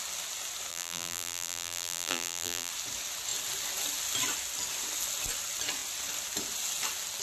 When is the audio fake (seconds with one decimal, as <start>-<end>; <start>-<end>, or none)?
0.7-2.7